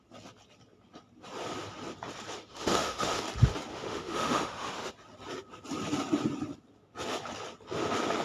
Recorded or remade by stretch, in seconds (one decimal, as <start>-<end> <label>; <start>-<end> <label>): 0.0-2.5 recorded; 2.5-3.2 remade; 3.2-3.7 recorded; 3.7-4.9 remade; 4.9-8.2 recorded

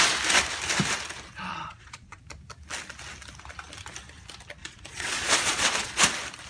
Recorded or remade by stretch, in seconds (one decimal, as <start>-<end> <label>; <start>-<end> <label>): 0.0-1.5 recorded; 1.5-2.2 remade; 2.2-4.6 recorded; 4.6-6.0 remade; 6.0-6.5 recorded

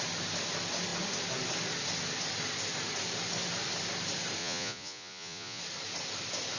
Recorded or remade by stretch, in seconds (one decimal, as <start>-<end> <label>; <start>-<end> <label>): 0.0-4.4 recorded; 4.4-5.6 remade; 5.6-6.6 recorded